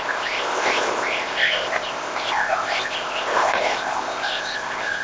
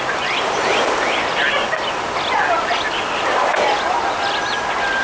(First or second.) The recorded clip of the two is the second